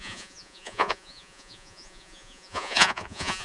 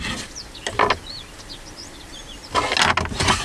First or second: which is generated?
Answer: first